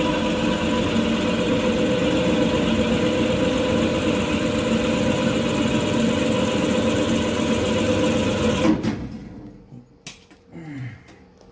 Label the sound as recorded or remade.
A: recorded